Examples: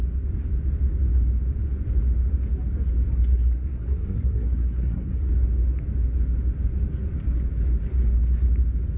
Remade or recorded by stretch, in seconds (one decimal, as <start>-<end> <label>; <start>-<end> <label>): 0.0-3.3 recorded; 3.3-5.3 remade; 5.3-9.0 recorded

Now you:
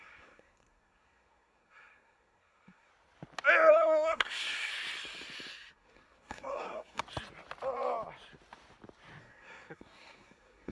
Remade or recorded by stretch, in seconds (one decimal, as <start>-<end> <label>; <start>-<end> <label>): 0.0-2.9 remade; 2.9-3.7 recorded; 3.7-4.7 remade; 4.7-5.5 recorded; 5.5-7.0 remade; 7.0-9.2 recorded; 9.2-10.7 remade

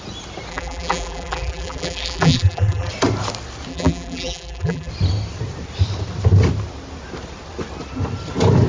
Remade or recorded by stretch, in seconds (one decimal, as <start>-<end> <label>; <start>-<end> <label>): 0.0-0.5 recorded; 0.5-2.9 remade; 2.9-3.7 recorded; 3.7-4.9 remade; 4.9-8.7 recorded